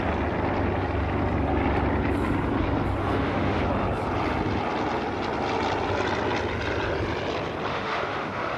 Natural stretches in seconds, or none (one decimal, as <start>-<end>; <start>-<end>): 0.0-3.0; 3.6-7.7